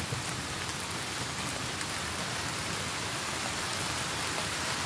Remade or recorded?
recorded